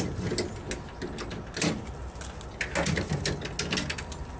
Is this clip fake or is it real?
real